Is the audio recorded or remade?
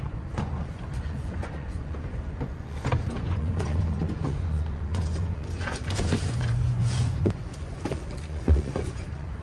remade